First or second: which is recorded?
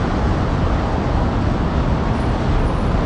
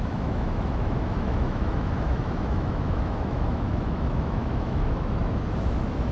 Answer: first